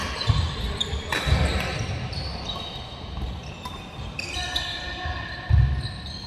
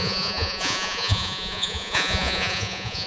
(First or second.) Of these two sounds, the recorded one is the first